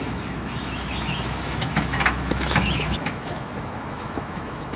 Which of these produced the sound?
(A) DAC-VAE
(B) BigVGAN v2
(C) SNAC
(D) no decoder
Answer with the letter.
A